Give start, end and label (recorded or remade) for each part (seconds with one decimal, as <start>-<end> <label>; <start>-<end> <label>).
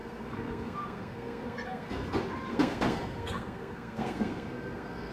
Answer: 0.0-1.9 remade; 1.9-2.5 recorded; 2.5-5.1 remade